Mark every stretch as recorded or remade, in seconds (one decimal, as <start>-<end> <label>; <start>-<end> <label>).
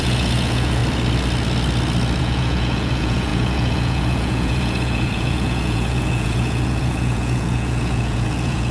0.0-0.8 remade; 0.8-2.2 recorded; 2.2-8.7 remade